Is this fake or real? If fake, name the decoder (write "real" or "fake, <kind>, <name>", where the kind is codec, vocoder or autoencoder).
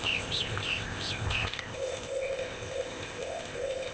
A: fake, codec, ZipCodec